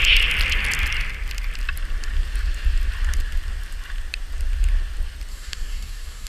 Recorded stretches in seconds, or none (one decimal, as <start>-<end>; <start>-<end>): 0.0-5.3